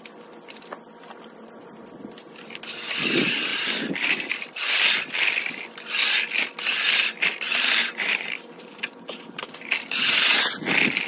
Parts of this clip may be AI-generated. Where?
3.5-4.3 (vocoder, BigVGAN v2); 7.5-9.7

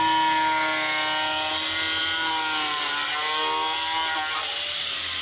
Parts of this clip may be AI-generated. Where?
none

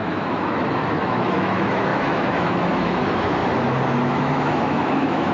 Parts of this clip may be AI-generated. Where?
0.0-3.4 (autoencoder, DAC-VAE); 4.1-5.3

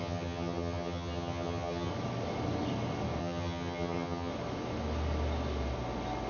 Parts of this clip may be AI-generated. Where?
0.0-1.9 (vocoder, HiFi-GAN); 3.2-4.3